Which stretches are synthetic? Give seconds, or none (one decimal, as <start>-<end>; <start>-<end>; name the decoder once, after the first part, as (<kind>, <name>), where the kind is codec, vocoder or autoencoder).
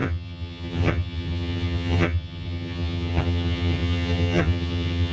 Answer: 0.0-5.1 (vocoder, HiFi-GAN)